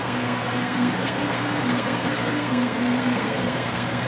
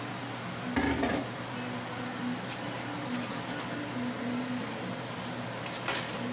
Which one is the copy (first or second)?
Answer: first